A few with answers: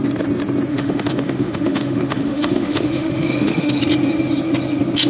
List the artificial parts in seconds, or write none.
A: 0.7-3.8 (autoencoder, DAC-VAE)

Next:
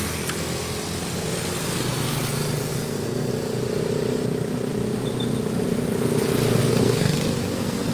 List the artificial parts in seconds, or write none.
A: 2.7-3.3 (codec, SNAC); 6.6-7.9

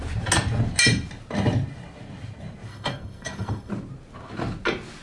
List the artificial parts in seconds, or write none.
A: 2.7-3.7 (codec, SNAC)

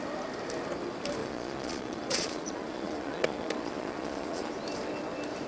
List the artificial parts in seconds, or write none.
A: 1.2-4.5 (vocoder, Vocos)

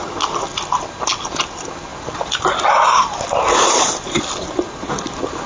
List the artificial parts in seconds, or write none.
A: none